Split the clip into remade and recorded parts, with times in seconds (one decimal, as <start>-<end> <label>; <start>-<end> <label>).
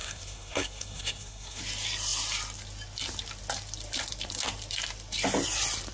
0.0-1.6 remade; 1.6-5.9 recorded